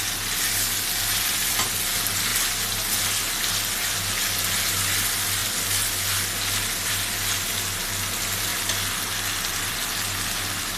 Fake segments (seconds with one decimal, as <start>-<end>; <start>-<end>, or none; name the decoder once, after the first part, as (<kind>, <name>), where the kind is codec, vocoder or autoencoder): none